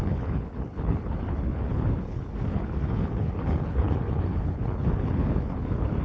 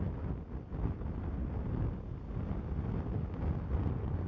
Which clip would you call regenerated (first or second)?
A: first